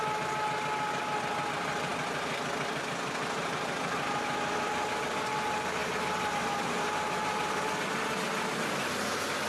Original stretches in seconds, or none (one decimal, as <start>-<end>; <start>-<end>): 0.0-9.5